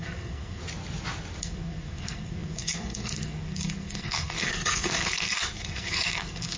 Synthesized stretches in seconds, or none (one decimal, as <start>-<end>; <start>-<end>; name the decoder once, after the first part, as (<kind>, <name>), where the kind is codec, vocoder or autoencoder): 0.0-0.6 (codec, SNAC); 1.4-6.6